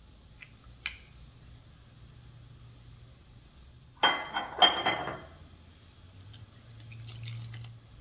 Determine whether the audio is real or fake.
real